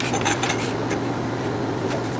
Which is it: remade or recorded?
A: recorded